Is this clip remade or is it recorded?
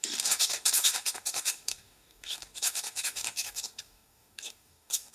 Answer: remade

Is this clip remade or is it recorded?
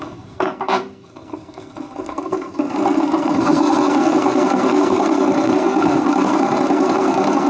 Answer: remade